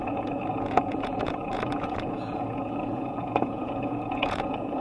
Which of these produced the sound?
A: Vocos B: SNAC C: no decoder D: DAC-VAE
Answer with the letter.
A